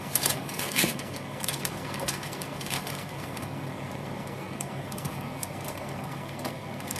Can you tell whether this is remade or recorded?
remade